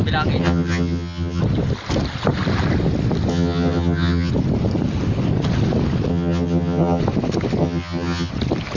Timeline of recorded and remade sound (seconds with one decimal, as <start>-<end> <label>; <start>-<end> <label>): 0.0-0.4 recorded; 0.4-1.4 remade; 1.4-3.3 recorded; 3.3-4.3 remade; 4.3-6.1 recorded; 6.1-7.0 remade; 7.0-7.6 recorded; 7.6-8.3 remade; 8.3-8.8 recorded